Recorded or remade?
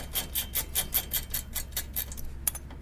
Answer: recorded